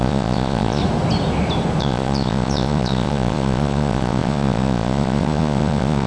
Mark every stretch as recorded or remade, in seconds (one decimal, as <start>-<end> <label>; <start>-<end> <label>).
0.0-0.8 remade; 0.8-1.8 recorded; 1.8-6.1 remade